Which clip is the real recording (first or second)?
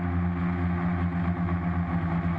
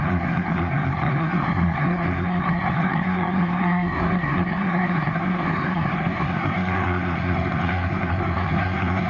first